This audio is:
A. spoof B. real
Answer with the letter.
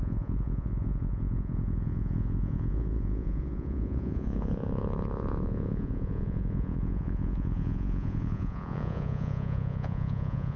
A